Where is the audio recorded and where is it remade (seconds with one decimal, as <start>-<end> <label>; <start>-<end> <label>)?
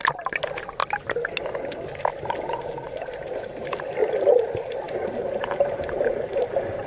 0.0-4.0 recorded; 4.0-6.9 remade